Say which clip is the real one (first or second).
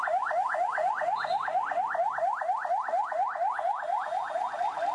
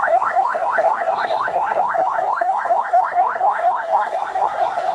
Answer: first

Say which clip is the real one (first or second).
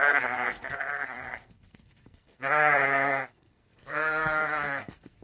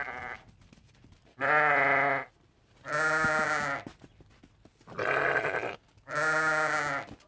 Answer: second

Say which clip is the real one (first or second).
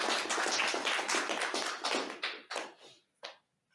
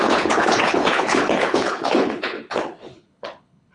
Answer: first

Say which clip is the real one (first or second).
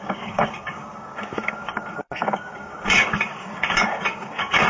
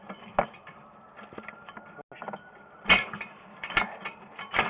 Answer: second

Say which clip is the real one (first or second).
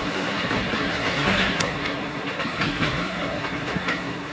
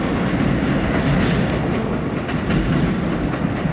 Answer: second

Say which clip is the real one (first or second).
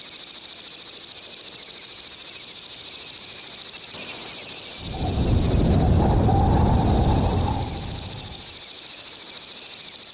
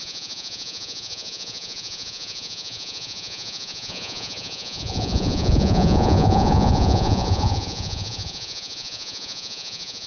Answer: first